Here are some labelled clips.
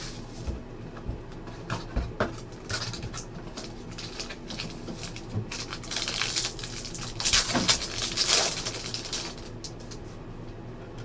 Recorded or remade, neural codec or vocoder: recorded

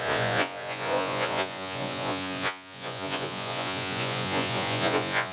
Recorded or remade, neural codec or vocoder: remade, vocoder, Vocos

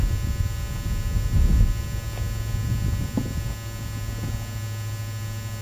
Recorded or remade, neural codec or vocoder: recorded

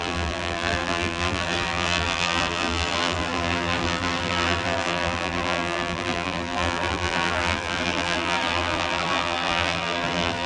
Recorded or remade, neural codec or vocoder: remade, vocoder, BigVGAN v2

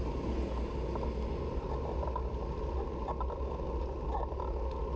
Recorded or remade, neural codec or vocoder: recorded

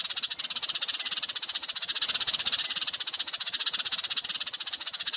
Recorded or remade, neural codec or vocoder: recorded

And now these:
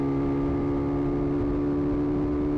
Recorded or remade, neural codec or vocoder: recorded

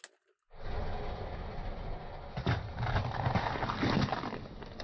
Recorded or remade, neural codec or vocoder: recorded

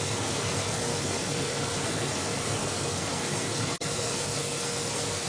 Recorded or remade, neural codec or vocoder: remade, codec, SNAC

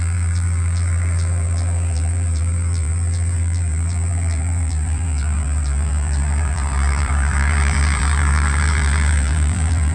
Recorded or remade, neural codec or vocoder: remade, vocoder, BigVGAN v2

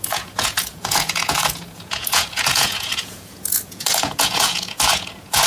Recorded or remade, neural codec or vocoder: remade, vocoder, Vocos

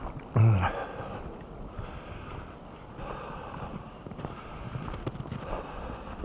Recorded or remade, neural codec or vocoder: recorded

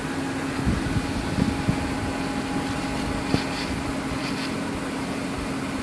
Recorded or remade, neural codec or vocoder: recorded